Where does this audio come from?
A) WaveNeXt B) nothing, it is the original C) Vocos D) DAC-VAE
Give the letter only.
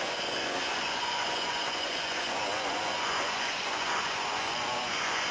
C